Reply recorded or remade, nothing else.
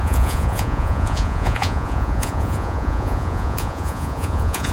remade